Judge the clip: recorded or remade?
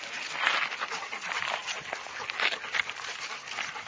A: recorded